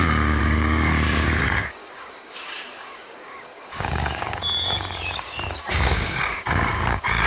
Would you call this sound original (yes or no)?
no